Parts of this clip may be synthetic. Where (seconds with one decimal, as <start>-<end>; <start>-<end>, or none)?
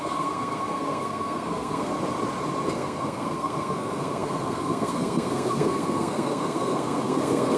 0.0-1.9; 2.7-7.6